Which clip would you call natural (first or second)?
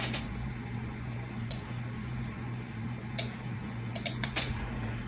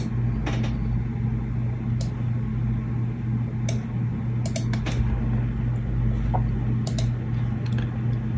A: second